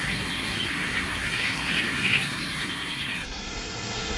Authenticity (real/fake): fake